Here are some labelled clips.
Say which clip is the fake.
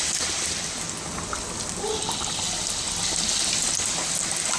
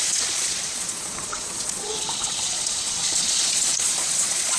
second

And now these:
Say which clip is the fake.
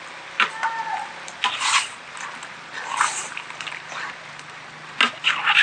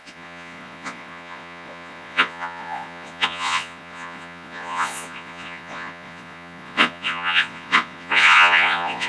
second